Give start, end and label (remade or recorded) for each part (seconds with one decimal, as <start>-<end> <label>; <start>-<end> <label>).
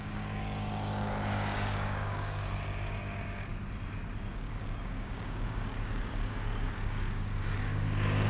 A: 0.0-3.5 remade; 3.5-4.3 recorded; 4.3-8.3 remade